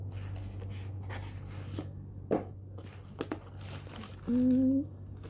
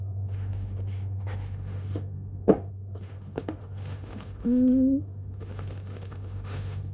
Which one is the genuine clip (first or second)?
first